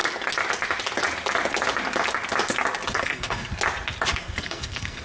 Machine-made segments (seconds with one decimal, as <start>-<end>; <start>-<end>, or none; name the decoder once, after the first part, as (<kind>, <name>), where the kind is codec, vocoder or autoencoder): 3.0-3.5 (codec, SNAC); 4.1-5.0